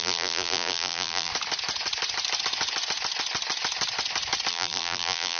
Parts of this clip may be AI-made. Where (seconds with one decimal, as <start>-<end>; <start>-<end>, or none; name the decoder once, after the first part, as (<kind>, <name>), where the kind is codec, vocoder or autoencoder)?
0.0-1.3 (vocoder, BigVGAN v2); 4.5-5.4